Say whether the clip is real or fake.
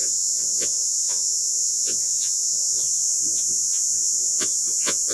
fake